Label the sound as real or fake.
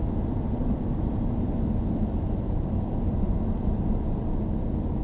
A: real